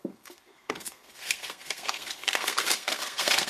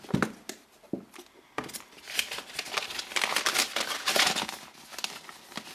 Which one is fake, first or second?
first